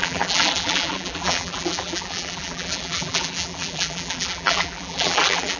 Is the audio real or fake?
fake